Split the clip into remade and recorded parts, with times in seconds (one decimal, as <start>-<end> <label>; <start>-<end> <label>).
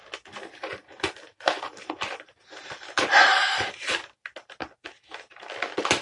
0.0-0.7 recorded; 0.7-3.9 remade; 3.9-6.0 recorded